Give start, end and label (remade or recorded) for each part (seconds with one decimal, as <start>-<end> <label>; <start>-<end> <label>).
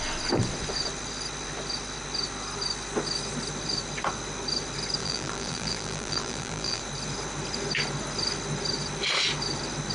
0.0-5.0 recorded; 5.0-6.8 remade; 6.8-9.9 recorded